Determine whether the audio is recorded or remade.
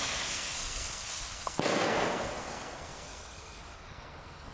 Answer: remade